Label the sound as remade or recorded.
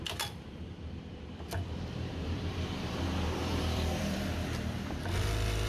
remade